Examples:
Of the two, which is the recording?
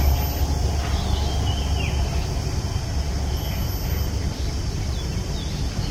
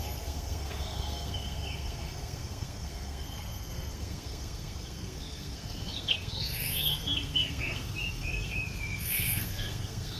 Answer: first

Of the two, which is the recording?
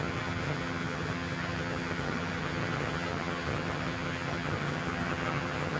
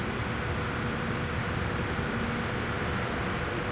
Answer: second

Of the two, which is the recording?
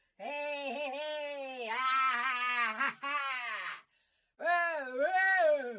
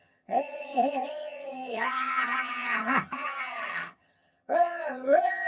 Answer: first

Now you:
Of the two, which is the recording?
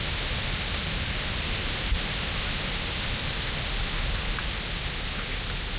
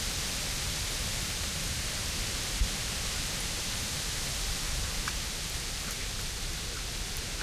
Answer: first